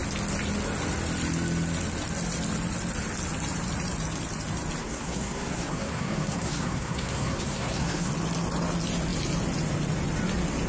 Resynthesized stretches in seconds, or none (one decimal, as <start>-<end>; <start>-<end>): 4.8-8.1

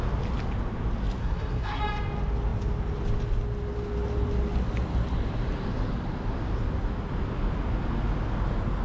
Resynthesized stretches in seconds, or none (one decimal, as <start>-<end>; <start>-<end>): 1.2-1.8

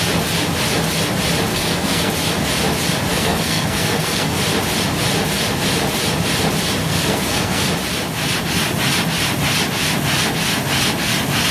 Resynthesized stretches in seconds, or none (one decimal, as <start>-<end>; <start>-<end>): 1.5-2.1; 3.1-4.4; 6.8-7.7

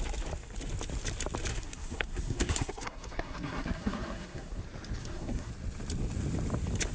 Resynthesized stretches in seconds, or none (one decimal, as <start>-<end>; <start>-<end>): 1.5-4.6; 5.0-5.5